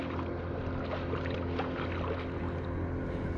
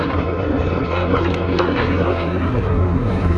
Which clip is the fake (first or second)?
second